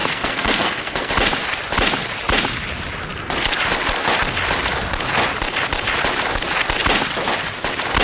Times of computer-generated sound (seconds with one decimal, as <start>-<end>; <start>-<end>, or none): 0.0-1.1